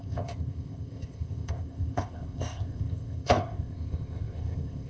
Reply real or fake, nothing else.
fake